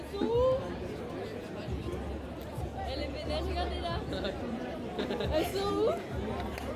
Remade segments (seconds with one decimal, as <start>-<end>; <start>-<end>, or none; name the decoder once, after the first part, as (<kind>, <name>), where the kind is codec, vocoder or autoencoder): none